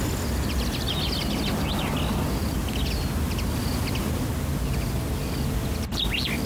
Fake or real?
real